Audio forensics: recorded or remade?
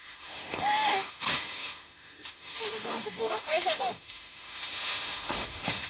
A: remade